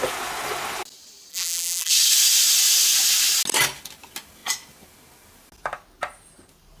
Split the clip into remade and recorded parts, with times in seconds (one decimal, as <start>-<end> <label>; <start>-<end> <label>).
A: 0.0-1.3 recorded; 1.3-1.9 remade; 1.9-6.8 recorded